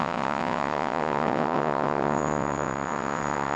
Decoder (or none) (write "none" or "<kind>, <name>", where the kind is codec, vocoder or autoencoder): vocoder, WaveNeXt